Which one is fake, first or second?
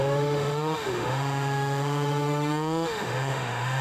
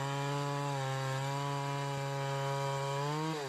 first